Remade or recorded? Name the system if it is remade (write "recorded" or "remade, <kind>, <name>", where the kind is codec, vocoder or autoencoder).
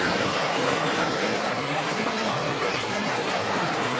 remade, codec, SNAC